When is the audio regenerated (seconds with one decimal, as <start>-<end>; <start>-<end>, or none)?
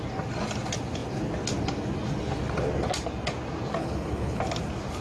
3.8-4.4